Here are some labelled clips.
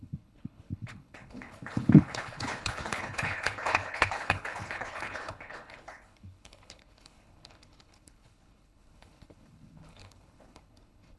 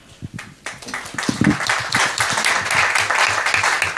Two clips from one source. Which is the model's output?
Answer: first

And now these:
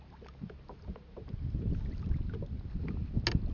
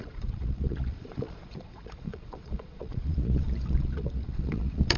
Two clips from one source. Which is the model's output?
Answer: second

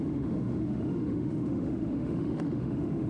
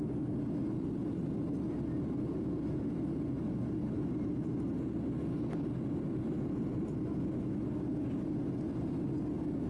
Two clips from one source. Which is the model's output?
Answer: first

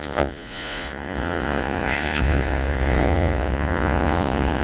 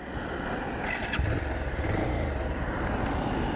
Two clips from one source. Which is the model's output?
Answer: first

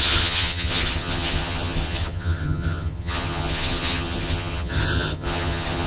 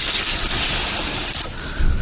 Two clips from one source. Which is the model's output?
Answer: first